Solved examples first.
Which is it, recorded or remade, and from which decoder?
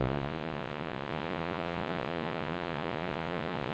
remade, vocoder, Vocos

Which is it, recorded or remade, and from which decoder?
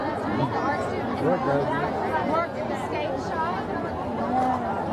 recorded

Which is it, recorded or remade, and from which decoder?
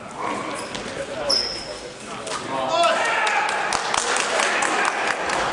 recorded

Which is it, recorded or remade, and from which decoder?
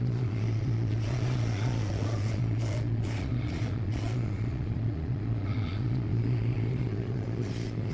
remade, vocoder, Vocos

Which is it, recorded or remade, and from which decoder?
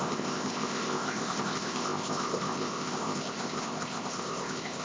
remade, codec, ZipCodec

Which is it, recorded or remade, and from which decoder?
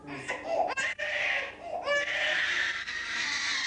recorded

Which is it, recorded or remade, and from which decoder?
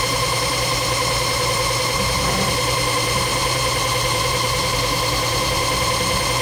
remade, vocoder, BigVGAN v2